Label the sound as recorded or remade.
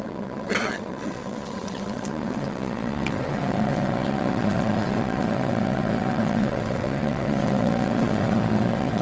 remade